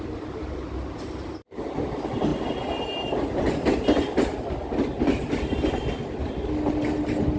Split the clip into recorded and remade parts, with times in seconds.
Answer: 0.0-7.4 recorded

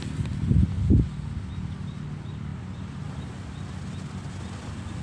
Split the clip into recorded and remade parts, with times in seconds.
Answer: 0.0-5.0 recorded

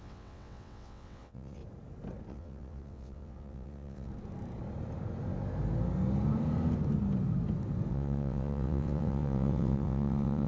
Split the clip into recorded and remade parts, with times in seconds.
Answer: 0.0-1.6 remade; 1.6-2.3 recorded; 2.3-4.1 remade; 4.1-7.9 recorded; 7.9-10.5 remade

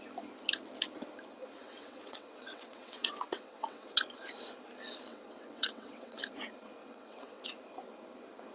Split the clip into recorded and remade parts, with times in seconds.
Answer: 0.0-1.6 recorded; 1.6-4.0 remade; 4.0-5.1 recorded; 5.1-6.2 remade; 6.2-6.8 recorded; 6.8-7.4 remade; 7.4-8.5 recorded

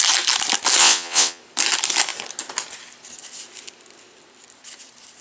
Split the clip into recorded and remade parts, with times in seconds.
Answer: 0.0-0.8 recorded; 0.8-1.4 remade; 1.4-5.2 recorded

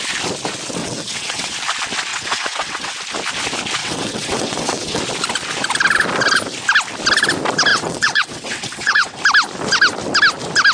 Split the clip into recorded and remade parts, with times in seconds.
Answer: 0.0-0.8 recorded; 0.8-1.5 remade; 1.5-2.1 recorded; 2.1-3.0 remade; 3.0-3.8 recorded; 3.8-5.0 remade; 5.0-7.7 recorded; 7.7-9.2 remade; 9.2-10.7 recorded